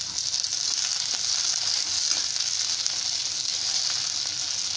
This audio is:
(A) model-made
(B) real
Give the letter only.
B